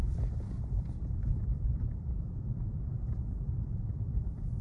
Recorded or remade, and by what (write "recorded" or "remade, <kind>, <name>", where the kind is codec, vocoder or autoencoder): remade, vocoder, BigVGAN v2